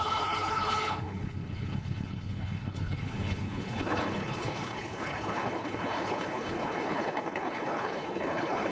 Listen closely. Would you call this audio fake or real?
fake